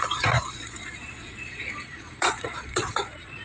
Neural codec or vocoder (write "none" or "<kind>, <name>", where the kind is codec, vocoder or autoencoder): vocoder, Vocos